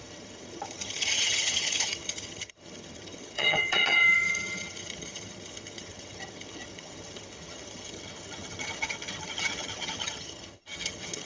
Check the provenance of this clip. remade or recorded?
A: remade